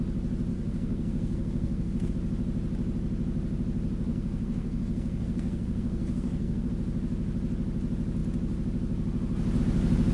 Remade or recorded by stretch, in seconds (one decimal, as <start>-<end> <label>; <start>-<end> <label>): 0.0-0.5 recorded; 0.5-2.1 remade; 2.1-4.1 recorded; 4.1-6.7 remade; 6.7-10.1 recorded